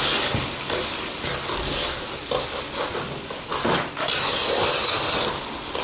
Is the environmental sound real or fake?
real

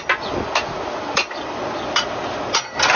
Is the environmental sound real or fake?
real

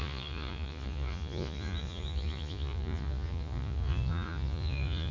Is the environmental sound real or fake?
fake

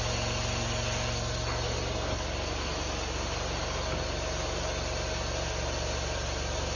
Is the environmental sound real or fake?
real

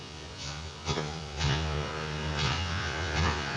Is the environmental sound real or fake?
fake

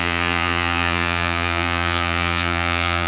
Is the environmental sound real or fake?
fake